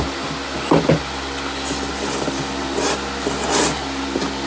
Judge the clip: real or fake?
real